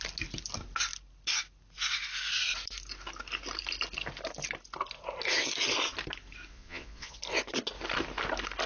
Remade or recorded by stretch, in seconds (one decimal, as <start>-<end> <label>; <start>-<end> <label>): 0.0-6.5 recorded; 6.5-7.2 remade; 7.2-8.7 recorded